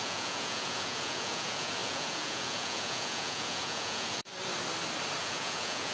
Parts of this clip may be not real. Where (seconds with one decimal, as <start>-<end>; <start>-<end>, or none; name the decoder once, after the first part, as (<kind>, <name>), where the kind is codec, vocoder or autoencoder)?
0.0-4.3 (vocoder, Vocos); 5.2-5.9